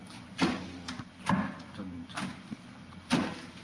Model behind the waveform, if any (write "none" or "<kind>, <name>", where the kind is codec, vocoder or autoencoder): none